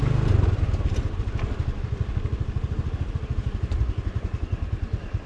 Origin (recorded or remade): recorded